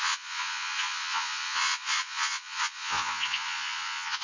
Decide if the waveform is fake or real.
fake